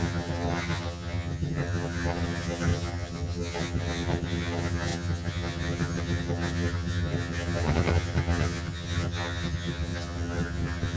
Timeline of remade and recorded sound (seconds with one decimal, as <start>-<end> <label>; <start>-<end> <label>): 0.0-11.0 remade